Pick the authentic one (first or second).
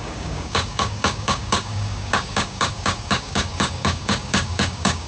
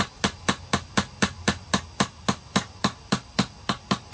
second